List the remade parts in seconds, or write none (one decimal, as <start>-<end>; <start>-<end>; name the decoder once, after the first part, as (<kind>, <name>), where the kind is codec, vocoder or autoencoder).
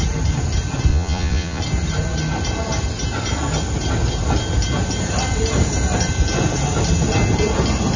0.9-1.6 (vocoder, Vocos)